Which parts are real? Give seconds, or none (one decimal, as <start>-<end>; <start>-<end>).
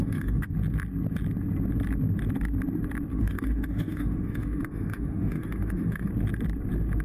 0.5-3.1; 6.1-7.0